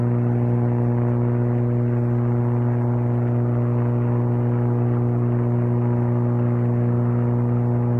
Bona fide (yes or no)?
yes